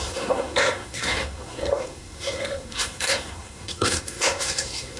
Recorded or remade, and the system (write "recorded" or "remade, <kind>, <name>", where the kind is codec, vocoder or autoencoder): remade, codec, SNAC